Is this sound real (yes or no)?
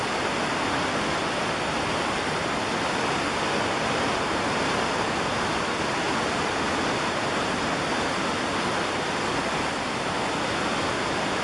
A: yes